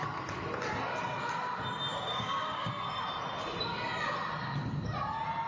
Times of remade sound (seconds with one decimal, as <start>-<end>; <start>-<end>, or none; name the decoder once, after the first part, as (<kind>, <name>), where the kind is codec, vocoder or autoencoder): 1.9-2.7 (codec, DAC)